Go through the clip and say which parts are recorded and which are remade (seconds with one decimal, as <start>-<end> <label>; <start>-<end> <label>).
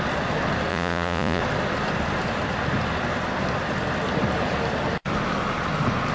0.0-0.7 recorded; 0.7-1.4 remade; 1.4-6.1 recorded